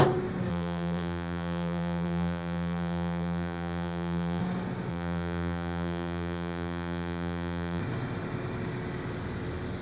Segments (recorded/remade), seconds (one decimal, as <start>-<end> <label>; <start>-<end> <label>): 0.0-0.5 recorded; 0.5-4.4 remade; 4.4-4.9 recorded; 4.9-7.8 remade; 7.8-9.8 recorded